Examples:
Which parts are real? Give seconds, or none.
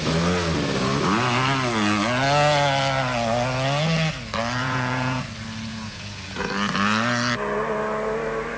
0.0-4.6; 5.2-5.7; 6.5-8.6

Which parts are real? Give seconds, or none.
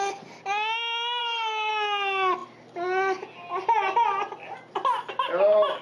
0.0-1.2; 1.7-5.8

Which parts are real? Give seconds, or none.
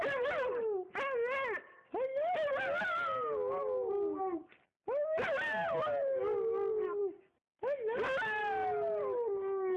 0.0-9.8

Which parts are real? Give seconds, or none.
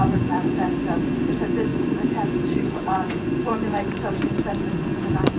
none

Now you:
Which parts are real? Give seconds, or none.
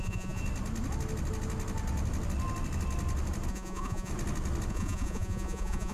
0.4-3.5; 4.1-4.7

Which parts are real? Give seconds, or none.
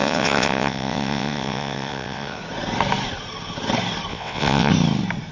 2.4-4.1; 4.7-5.3